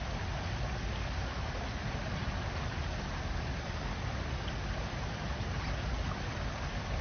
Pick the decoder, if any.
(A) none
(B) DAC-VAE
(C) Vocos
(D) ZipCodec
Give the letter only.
A